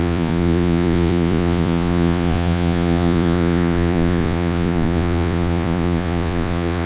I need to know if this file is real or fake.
fake